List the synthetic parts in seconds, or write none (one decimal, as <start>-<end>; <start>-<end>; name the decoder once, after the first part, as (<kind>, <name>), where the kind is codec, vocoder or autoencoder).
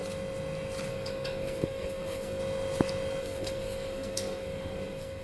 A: 0.9-2.4 (codec, SNAC); 3.2-5.2